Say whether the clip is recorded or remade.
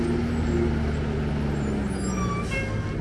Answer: recorded